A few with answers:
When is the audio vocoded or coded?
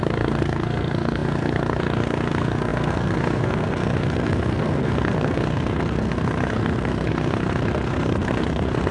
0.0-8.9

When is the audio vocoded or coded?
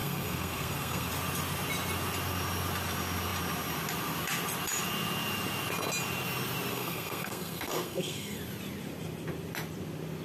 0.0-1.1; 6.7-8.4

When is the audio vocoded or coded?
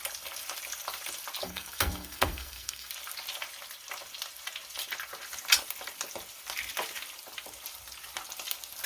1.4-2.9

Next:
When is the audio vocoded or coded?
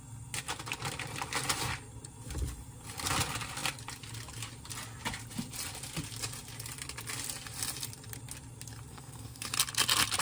8.9-9.5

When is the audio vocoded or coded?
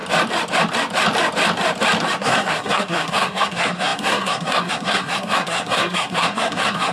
2.2-6.9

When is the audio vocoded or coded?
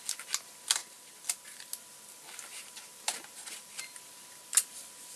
none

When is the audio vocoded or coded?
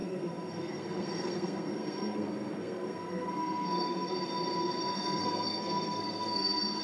0.0-4.1; 4.8-6.8